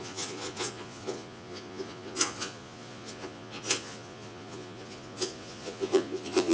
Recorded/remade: remade